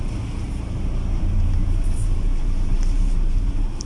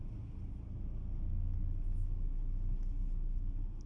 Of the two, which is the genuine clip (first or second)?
second